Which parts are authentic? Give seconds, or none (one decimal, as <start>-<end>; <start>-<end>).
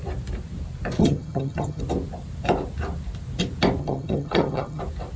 0.0-1.0; 1.8-3.8; 4.8-5.2